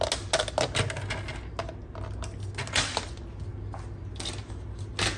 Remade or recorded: recorded